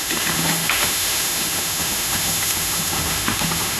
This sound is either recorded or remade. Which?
remade